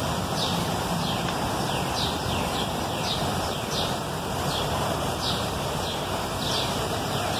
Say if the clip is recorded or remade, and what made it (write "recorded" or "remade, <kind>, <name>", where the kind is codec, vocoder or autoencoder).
remade, vocoder, BigVGAN v2